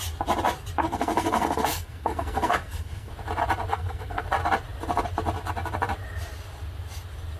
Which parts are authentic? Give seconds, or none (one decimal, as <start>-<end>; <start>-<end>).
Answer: 0.0-0.8; 3.1-3.7; 4.2-7.4